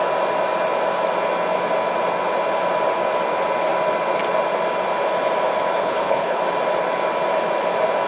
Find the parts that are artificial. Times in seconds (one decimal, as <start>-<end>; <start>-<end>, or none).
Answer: 5.8-6.4